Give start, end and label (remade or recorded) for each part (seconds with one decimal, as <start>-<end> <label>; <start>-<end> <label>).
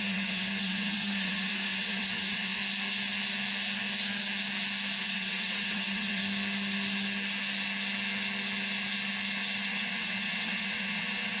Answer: 0.0-2.6 remade; 2.6-5.0 recorded; 5.0-6.2 remade; 6.2-9.7 recorded; 9.7-11.4 remade